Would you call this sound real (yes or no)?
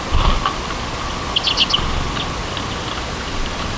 yes